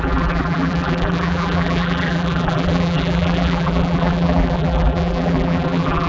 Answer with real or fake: fake